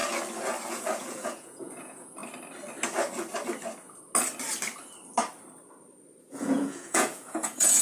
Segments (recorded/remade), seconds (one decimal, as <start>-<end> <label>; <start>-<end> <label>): 0.0-0.7 recorded; 0.7-2.2 remade; 2.2-6.2 recorded; 6.2-7.8 remade